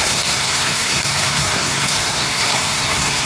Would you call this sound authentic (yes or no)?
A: no